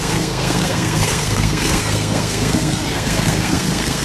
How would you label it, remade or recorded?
remade